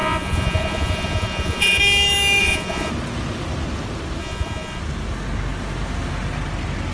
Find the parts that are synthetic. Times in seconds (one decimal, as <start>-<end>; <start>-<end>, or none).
0.0-1.8; 2.4-2.9; 4.2-4.8